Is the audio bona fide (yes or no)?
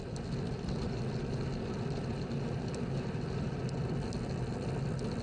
yes